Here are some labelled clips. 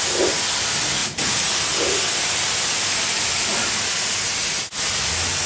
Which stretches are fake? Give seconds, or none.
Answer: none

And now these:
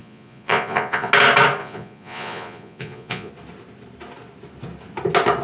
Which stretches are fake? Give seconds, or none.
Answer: 0.0-1.1 (vocoder, Vocos); 1.6-3.3